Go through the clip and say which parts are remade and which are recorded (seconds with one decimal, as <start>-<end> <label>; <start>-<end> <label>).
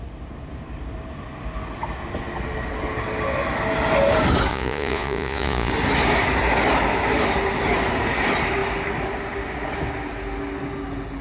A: 0.0-4.5 recorded; 4.5-5.7 remade; 5.7-11.2 recorded